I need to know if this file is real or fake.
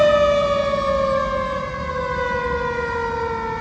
real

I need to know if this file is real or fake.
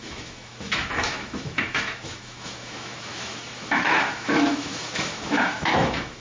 fake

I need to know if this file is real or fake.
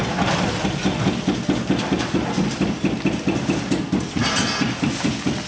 real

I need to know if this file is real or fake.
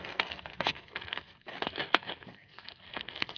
fake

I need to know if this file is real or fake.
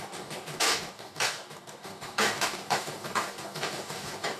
fake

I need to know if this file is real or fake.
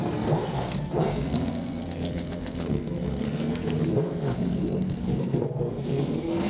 fake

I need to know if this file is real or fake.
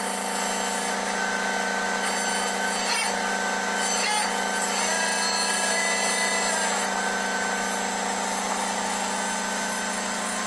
real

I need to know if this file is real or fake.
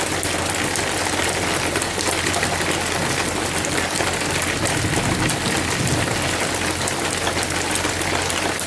real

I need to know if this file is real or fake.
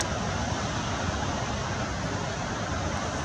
real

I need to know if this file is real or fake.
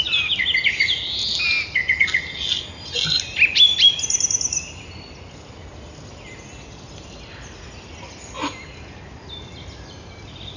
real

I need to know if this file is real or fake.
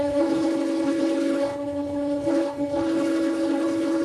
fake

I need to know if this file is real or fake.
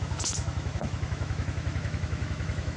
fake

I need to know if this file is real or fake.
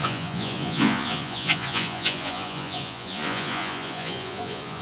fake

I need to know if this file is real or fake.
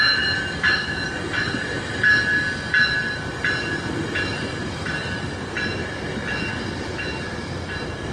real